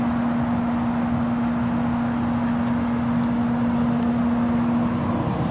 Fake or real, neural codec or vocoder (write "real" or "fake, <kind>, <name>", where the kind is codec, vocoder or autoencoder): real